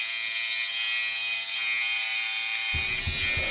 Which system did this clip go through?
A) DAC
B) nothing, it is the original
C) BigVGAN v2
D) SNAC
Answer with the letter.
B